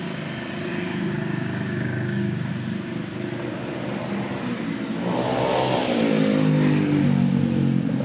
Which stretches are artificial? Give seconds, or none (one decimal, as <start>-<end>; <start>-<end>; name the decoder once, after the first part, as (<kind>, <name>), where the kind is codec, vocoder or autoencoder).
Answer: 0.7-2.5 (codec, DAC)